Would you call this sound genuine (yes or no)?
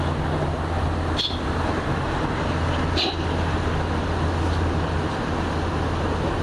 yes